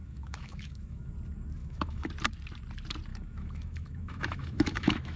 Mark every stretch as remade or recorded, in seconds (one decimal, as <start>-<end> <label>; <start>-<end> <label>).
0.0-1.1 remade; 1.1-1.6 recorded; 1.6-2.1 remade; 2.1-3.1 recorded; 3.1-5.2 remade

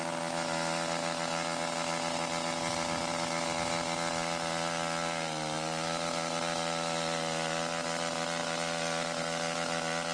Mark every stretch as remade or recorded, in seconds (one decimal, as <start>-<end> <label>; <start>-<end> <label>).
0.0-10.1 recorded

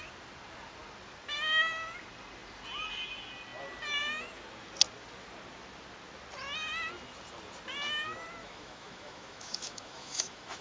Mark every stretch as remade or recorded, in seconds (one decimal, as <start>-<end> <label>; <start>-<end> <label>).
0.0-8.4 recorded; 8.4-10.6 remade

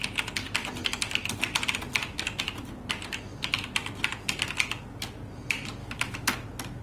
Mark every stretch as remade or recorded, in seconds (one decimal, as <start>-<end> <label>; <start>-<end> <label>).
0.0-5.8 recorded; 5.8-6.3 remade; 6.3-6.8 recorded

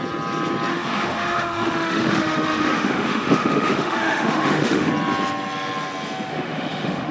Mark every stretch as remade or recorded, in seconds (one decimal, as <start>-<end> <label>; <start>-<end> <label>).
0.0-0.7 recorded; 0.7-4.9 remade; 4.9-6.3 recorded; 6.3-7.1 remade